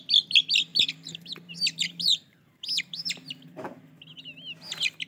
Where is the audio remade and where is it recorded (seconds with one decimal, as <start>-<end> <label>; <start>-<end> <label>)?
0.0-0.7 recorded; 0.7-3.8 remade; 3.8-5.1 recorded